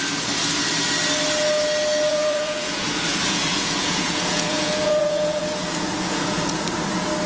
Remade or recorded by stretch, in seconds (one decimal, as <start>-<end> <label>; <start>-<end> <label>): 0.0-2.1 recorded; 2.1-6.5 remade; 6.5-7.3 recorded